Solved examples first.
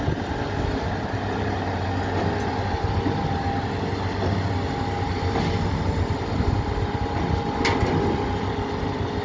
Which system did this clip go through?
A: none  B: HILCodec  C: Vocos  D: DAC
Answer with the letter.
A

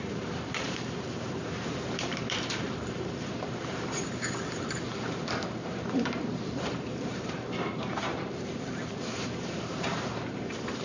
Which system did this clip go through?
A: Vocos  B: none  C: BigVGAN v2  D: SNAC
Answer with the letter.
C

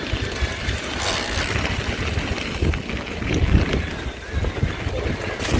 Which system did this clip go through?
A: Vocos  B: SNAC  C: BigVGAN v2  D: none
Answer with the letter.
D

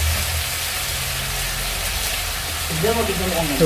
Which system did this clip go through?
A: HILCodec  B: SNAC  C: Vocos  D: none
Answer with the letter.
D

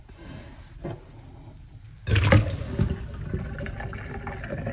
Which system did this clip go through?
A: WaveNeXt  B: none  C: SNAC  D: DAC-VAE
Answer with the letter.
B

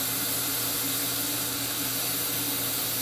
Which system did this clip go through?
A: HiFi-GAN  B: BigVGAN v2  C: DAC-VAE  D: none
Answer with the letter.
D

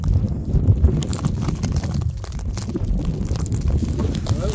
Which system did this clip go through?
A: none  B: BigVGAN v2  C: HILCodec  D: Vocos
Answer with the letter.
A